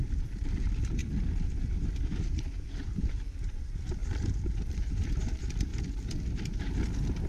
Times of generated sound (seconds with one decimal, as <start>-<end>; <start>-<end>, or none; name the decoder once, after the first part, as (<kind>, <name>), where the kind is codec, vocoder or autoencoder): 4.0-4.9 (vocoder, BigVGAN v2); 5.7-6.2